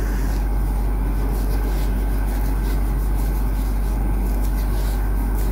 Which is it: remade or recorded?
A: recorded